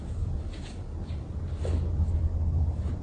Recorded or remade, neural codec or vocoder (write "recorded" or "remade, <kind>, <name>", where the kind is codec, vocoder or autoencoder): recorded